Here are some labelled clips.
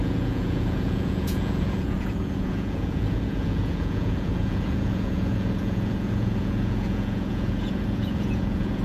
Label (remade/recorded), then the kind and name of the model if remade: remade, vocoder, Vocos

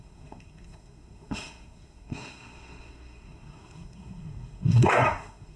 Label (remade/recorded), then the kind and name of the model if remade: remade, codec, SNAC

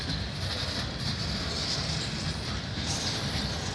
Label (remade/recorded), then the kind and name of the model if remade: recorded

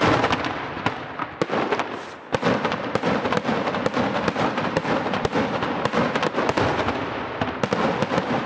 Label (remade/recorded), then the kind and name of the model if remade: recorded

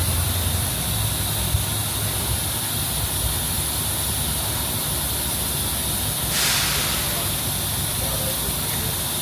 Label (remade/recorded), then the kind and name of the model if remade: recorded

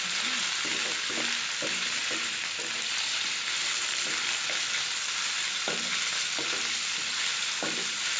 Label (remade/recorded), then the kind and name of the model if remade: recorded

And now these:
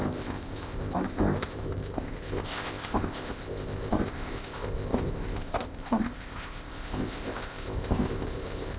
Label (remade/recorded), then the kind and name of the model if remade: remade, codec, ZipCodec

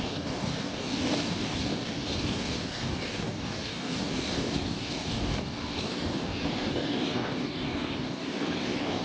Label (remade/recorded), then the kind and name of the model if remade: remade, codec, DAC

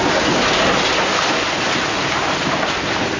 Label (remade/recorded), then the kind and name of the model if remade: recorded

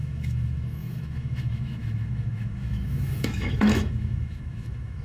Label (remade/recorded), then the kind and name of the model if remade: remade, autoencoder, DAC-VAE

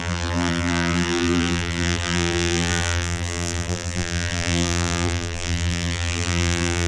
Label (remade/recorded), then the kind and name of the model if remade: remade, vocoder, BigVGAN v2